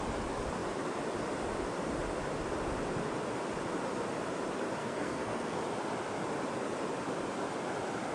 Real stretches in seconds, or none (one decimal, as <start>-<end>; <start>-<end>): 0.0-4.8; 5.6-8.1